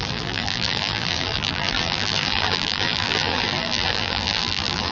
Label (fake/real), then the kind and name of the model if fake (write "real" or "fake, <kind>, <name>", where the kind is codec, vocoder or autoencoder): fake, vocoder, BigVGAN v2